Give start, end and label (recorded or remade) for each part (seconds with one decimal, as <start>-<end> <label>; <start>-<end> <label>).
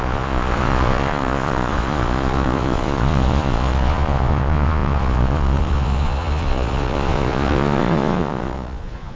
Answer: 0.0-9.2 remade